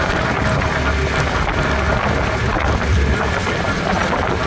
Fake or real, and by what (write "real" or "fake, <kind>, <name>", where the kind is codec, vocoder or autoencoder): real